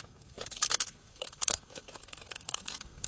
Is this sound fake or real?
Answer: fake